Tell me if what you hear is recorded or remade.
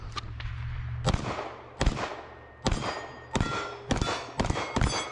recorded